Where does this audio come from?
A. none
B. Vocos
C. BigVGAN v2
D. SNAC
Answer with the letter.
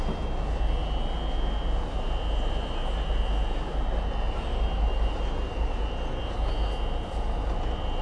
A